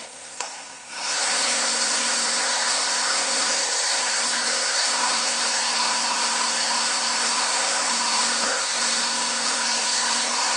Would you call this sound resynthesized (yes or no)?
yes